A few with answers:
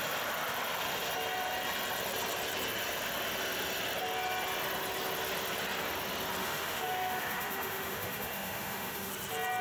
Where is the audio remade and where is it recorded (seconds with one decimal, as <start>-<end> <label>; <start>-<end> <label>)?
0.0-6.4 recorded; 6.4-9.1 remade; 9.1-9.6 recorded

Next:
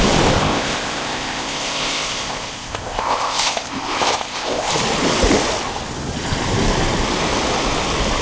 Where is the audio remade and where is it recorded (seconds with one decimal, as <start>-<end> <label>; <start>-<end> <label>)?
0.0-0.4 recorded; 0.4-4.7 remade; 4.7-8.2 recorded

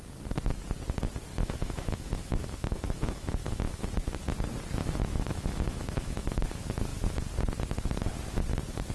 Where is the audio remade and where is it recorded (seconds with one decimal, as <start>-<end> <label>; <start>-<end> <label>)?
0.0-1.3 recorded; 1.3-3.8 remade; 3.8-4.8 recorded; 4.8-6.3 remade; 6.3-8.9 recorded